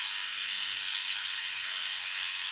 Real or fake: fake